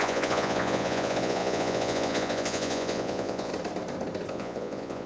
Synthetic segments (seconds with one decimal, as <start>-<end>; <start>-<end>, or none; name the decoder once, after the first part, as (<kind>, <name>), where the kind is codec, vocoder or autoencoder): 0.0-3.5 (vocoder, Vocos); 4.3-5.1